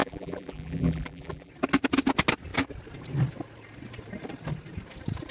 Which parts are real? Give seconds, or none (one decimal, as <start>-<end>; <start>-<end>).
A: 1.5-5.3